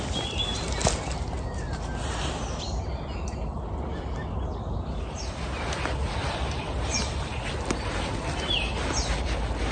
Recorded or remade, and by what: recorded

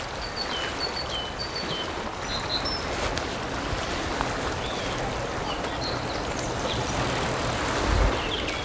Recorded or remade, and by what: recorded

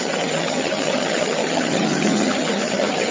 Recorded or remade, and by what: remade, vocoder, HiFi-GAN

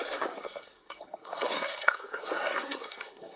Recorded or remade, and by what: remade, codec, SNAC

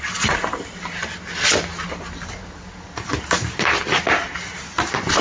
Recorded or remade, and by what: recorded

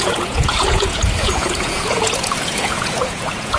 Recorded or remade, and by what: remade, vocoder, Vocos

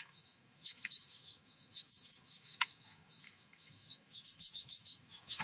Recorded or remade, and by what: remade, autoencoder, DAC-VAE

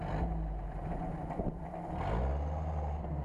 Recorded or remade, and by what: recorded